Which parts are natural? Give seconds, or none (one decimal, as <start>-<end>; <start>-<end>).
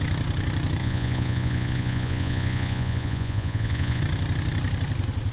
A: 0.0-0.8; 4.0-5.3